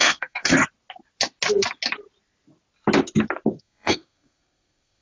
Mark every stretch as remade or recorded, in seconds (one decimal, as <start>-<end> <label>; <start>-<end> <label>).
0.0-0.6 remade; 0.6-3.6 recorded; 3.6-5.0 remade